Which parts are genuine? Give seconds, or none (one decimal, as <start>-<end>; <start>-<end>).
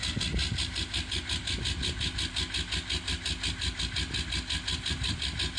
0.0-5.6